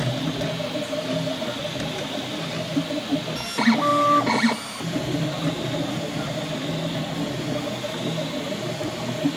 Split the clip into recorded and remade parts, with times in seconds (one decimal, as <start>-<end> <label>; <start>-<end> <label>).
0.0-9.4 recorded